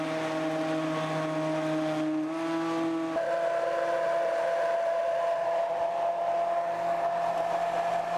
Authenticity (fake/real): real